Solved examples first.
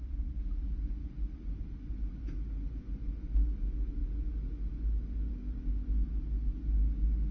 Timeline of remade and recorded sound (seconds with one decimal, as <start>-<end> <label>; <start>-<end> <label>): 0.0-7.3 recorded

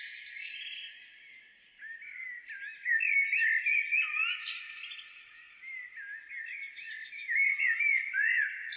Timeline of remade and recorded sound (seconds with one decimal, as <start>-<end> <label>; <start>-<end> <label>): 0.0-8.8 recorded

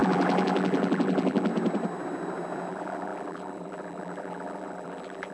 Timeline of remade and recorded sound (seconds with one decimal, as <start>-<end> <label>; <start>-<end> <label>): 0.0-1.5 remade; 1.5-2.7 recorded; 2.7-5.3 remade

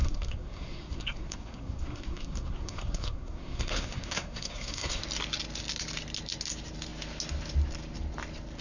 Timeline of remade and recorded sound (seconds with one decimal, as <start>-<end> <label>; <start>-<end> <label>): 0.0-5.0 remade; 5.0-8.6 recorded

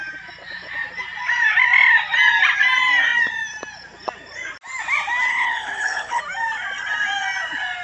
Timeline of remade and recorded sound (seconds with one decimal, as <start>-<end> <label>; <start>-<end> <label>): 0.0-5.3 recorded; 5.3-6.2 remade; 6.2-7.8 recorded